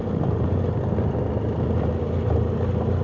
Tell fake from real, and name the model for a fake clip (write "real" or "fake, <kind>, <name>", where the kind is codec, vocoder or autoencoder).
real